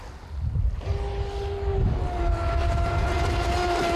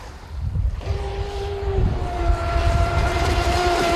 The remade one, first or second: second